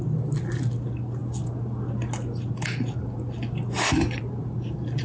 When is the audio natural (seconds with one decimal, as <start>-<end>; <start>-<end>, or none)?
0.0-5.0

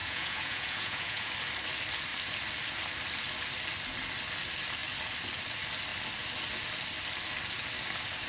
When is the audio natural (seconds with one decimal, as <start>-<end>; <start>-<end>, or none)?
1.3-8.3